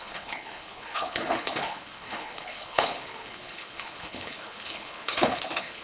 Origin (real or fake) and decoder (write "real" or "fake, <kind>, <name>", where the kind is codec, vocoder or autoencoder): fake, codec, HILCodec